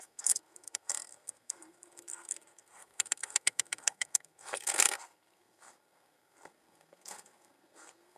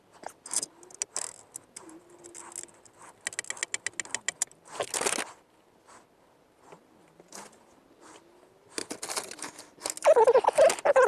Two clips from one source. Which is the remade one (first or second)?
first